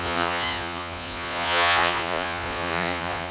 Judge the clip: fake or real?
fake